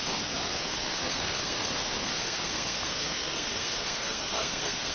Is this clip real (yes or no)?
no